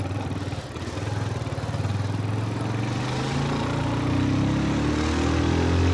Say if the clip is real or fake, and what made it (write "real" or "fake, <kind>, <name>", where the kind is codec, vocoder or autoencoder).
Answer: real